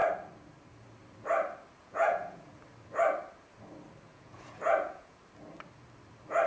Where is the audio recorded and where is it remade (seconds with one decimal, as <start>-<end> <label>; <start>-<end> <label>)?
0.0-1.8 recorded; 1.8-2.5 remade; 2.5-4.1 recorded; 4.1-5.2 remade; 5.2-6.5 recorded